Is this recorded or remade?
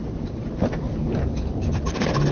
recorded